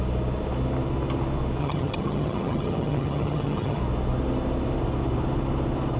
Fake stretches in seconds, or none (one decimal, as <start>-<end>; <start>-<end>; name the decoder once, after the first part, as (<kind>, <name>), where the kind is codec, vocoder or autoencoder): 1.6-3.8 (vocoder, HiFi-GAN)